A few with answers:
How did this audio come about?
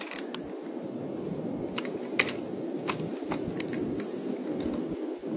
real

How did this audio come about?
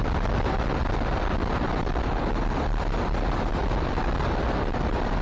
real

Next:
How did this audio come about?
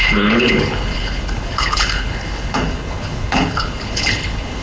fake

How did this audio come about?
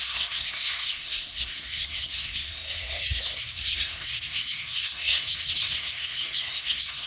fake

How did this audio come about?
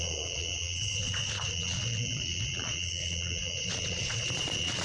fake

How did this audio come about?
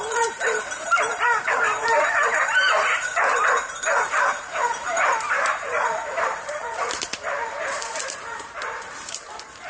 fake